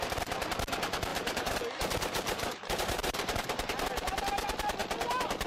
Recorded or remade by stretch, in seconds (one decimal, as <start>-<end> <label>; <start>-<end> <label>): 0.0-1.1 recorded; 1.1-3.8 remade; 3.8-5.5 recorded